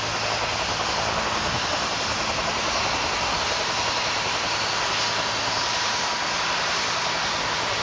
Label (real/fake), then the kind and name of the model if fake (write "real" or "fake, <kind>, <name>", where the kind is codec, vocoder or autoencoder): real